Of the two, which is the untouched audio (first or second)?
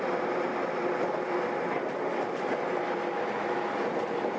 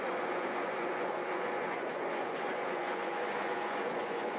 first